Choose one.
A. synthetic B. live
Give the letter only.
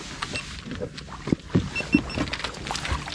B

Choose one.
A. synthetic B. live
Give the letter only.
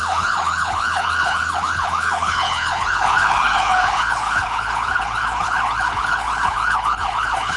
A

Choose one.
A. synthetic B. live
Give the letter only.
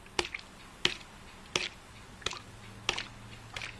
B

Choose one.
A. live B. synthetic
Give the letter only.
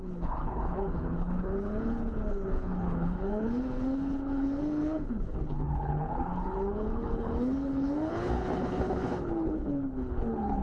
B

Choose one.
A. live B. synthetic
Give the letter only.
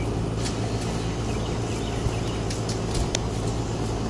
A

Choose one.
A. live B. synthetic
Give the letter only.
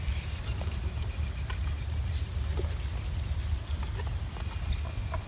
A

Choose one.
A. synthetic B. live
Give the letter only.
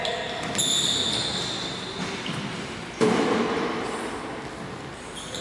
B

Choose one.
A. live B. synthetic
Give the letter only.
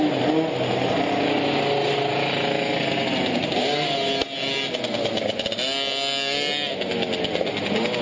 A